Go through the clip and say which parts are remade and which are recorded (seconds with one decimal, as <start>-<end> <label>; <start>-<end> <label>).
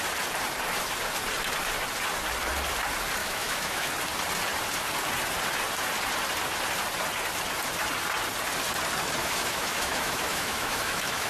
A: 0.0-3.2 recorded; 3.2-3.9 remade; 3.9-9.2 recorded; 9.2-11.3 remade